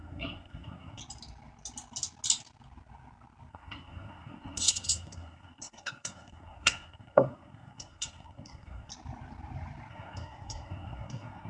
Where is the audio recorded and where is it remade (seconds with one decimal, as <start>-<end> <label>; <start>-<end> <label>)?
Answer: 0.0-1.0 remade; 1.0-3.5 recorded; 3.5-8.9 remade; 8.9-9.9 recorded; 9.9-11.5 remade